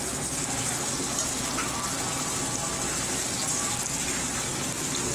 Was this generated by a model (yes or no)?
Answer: no